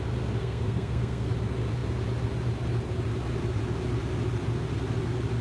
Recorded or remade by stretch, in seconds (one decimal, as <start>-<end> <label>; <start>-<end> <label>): 0.0-0.4 recorded; 0.4-1.3 remade; 1.3-5.4 recorded